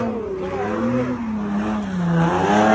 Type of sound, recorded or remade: recorded